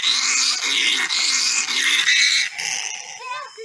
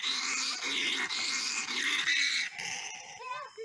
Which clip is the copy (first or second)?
second